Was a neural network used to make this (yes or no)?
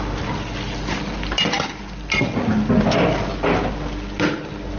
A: no